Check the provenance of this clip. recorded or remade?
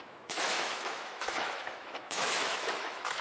remade